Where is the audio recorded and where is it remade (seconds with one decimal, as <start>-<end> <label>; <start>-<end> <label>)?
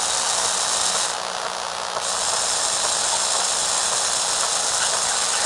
0.0-5.5 recorded